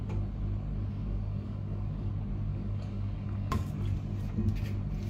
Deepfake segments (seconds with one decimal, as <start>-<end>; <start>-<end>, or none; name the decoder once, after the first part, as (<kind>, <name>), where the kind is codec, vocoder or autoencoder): 0.9-2.1 (codec, DAC); 2.5-3.7